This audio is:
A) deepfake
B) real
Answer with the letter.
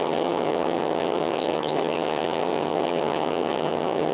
A